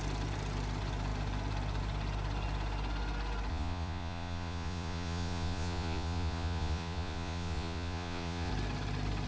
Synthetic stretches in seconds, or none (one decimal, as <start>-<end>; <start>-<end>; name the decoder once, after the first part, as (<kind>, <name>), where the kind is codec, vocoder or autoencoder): 3.5-8.5 (vocoder, Vocos)